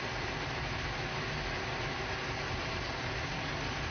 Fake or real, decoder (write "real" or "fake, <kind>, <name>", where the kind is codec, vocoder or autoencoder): real